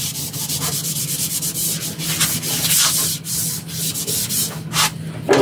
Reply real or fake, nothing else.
real